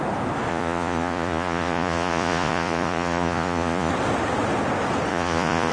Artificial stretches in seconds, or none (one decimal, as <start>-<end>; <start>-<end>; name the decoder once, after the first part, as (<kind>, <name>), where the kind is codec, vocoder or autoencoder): 0.5-3.9 (vocoder, Vocos); 5.1-5.7